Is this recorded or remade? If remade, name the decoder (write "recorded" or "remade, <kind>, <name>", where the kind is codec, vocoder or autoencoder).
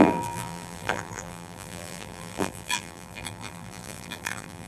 remade, vocoder, BigVGAN v2